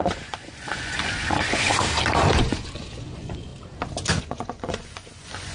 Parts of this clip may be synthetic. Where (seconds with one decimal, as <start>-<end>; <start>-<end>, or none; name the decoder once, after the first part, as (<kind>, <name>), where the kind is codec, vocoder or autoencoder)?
0.0-1.7 (vocoder, Vocos); 2.3-3.5; 4.2-5.5